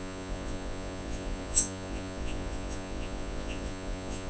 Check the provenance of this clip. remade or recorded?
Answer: remade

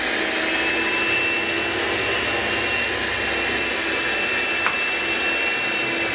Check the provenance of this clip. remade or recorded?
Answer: recorded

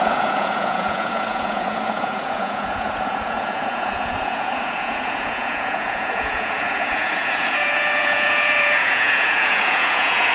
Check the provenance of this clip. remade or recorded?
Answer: remade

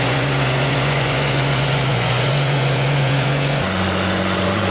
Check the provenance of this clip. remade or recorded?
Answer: remade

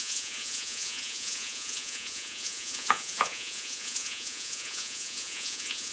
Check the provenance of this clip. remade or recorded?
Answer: remade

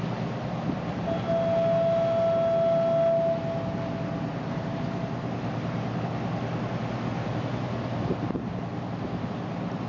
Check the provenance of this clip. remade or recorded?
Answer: recorded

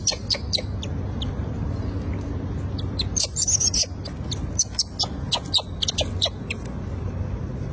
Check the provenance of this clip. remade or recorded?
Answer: recorded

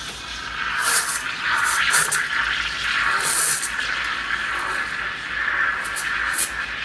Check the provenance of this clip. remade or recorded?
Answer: recorded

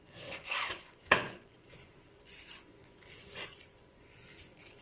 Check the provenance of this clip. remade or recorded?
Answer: remade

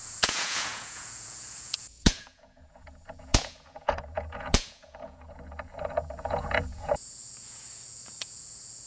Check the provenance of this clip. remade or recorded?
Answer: remade